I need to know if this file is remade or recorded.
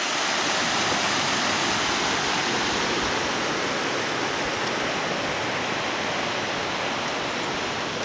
recorded